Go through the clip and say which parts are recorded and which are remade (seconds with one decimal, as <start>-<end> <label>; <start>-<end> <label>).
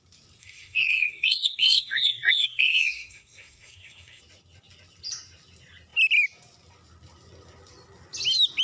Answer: 0.0-0.4 recorded; 0.4-4.2 remade; 4.2-8.6 recorded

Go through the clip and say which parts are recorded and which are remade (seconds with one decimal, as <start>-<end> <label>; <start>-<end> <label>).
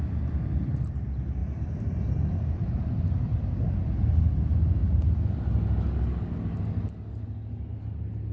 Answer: 0.0-1.4 recorded; 1.4-3.4 remade; 3.4-8.3 recorded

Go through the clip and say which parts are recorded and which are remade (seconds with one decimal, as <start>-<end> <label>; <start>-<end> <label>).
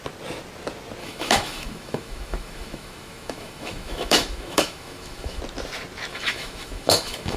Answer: 0.0-1.0 recorded; 1.0-5.4 remade; 5.4-6.1 recorded; 6.1-7.4 remade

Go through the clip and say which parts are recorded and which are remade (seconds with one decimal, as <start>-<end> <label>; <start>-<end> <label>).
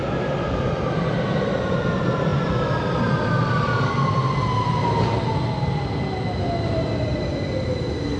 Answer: 0.0-8.2 recorded